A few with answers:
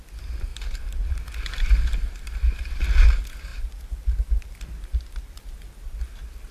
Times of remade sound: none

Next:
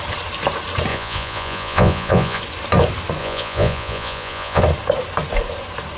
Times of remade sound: 0.9-2.4 (vocoder, Vocos); 3.2-4.6

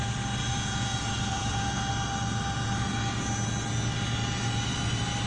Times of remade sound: 0.4-1.9 (vocoder, Vocos)